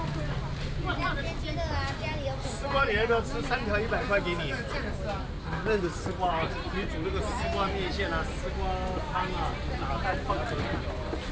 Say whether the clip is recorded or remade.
recorded